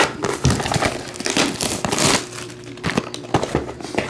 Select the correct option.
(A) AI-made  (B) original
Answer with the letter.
B